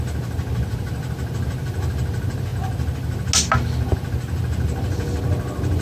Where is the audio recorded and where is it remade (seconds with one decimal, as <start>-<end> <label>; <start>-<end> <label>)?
0.0-5.8 recorded